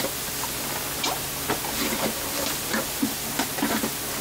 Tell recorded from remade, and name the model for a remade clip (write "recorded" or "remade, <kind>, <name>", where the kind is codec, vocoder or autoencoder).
recorded